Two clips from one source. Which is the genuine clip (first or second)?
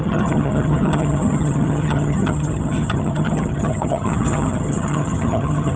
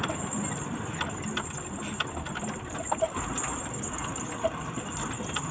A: second